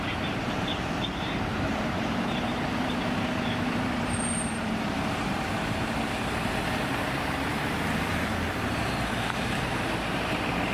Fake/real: fake